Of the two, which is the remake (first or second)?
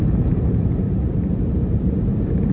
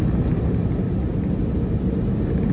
first